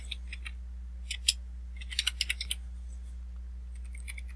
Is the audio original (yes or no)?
yes